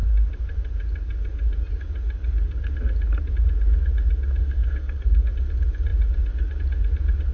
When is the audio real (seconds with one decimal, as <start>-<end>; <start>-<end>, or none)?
0.0-4.4; 5.3-7.3